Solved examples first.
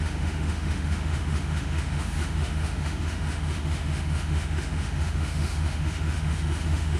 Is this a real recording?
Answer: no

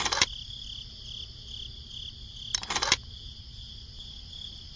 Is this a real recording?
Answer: yes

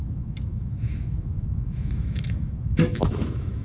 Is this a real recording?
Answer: no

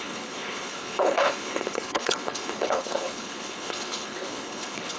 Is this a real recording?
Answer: no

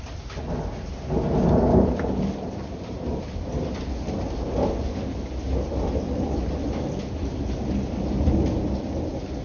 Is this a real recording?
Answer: yes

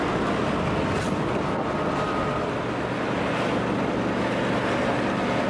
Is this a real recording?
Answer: yes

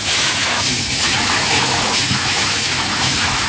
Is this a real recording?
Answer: no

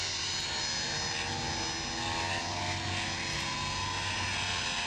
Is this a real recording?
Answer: yes